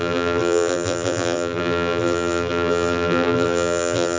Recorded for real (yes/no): no